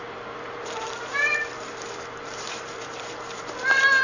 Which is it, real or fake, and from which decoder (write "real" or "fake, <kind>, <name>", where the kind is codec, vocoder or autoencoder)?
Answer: fake, vocoder, BigVGAN v2